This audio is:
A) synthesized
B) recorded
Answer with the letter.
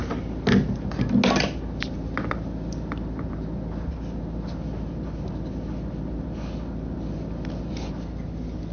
B